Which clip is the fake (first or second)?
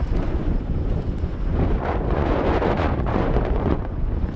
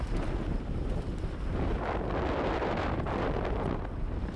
first